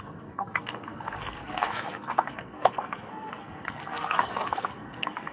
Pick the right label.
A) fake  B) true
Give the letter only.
A